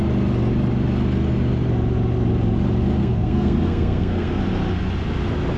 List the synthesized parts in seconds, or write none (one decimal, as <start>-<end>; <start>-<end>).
3.0-4.4